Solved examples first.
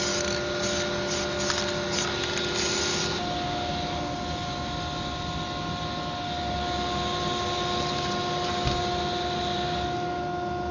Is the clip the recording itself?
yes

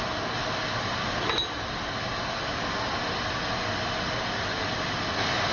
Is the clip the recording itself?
yes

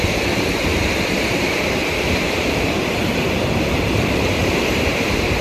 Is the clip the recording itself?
no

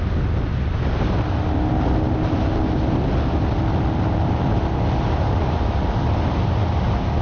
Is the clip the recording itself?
yes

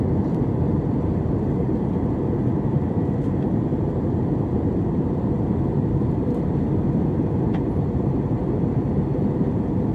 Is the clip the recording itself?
no